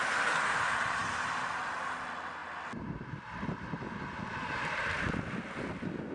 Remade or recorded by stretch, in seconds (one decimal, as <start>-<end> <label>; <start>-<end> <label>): 0.0-6.1 recorded